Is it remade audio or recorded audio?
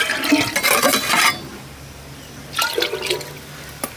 recorded